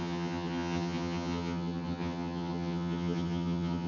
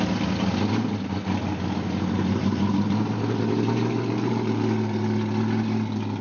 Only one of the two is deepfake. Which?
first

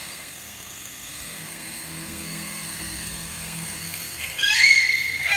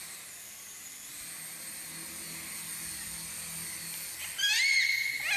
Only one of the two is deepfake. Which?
first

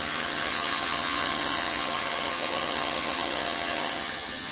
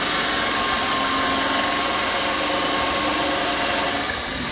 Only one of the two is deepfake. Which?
first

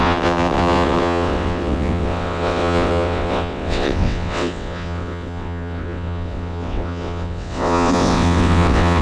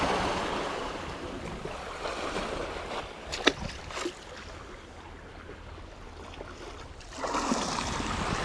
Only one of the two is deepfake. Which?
first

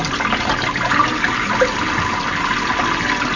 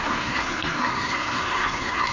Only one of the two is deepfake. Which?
second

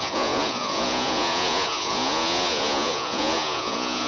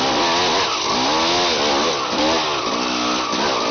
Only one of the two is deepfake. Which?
first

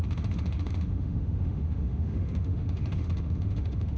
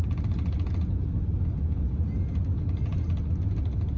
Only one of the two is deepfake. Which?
first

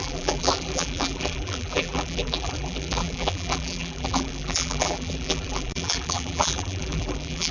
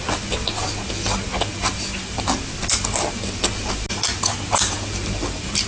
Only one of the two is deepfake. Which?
first